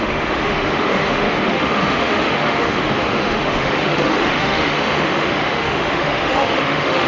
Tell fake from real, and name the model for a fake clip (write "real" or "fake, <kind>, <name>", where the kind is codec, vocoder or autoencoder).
fake, autoencoder, DAC-VAE